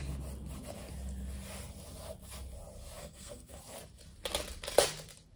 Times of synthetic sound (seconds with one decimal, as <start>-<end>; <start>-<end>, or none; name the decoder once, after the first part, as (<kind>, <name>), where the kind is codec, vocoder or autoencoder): 3.0-3.6 (codec, SNAC)

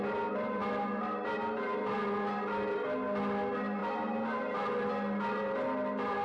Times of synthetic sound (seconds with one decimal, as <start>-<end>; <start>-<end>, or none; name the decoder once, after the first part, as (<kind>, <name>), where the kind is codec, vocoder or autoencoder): none

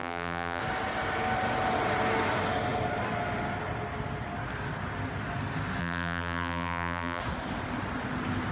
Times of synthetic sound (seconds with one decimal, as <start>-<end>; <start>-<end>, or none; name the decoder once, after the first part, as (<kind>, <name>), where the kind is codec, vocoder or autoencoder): 0.0-0.6 (vocoder, BigVGAN v2); 5.8-7.2